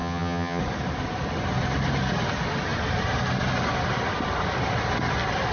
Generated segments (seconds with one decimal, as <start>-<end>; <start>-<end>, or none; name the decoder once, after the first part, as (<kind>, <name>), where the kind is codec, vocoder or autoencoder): 0.0-0.6 (vocoder, HiFi-GAN)